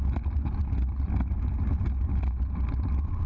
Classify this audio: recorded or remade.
recorded